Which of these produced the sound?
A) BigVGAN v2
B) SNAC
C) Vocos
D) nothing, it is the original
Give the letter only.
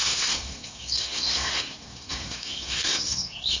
B